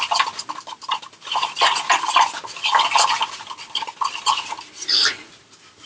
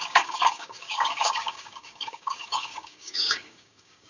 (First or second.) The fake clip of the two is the second